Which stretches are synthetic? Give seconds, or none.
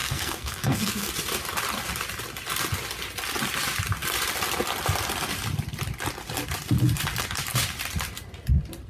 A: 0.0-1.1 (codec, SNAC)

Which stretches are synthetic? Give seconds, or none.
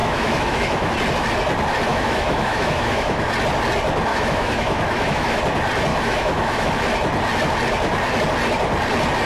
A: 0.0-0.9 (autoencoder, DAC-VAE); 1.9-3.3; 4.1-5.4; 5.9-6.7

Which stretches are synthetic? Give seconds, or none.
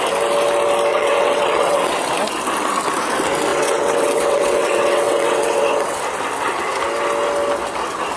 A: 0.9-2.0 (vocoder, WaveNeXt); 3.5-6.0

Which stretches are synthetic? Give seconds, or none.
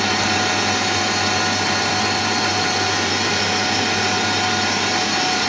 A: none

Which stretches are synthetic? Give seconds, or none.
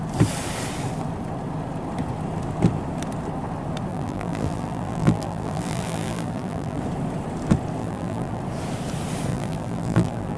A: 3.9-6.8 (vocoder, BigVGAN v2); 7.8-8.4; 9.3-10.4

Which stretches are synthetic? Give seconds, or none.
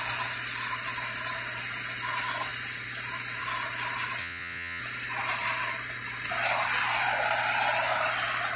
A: 4.2-4.8 (vocoder, WaveNeXt)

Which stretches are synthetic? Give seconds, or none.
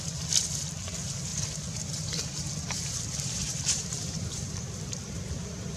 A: 1.3-4.6 (vocoder, BigVGAN v2)